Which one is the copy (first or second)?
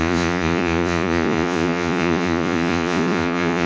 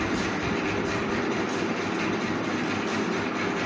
first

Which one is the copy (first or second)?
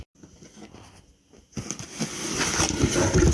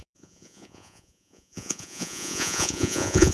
second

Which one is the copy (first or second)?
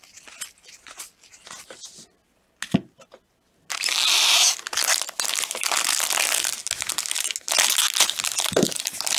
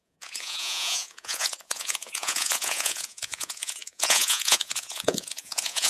second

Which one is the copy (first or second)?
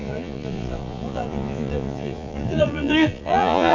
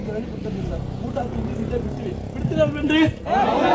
first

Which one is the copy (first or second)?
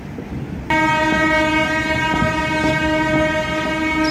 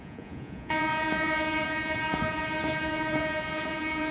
second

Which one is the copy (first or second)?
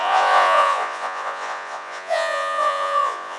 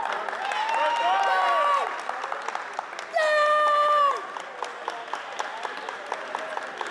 first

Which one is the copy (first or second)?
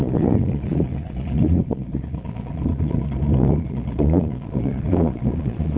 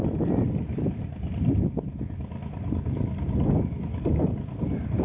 first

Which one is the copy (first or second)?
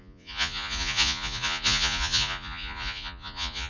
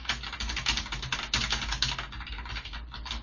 first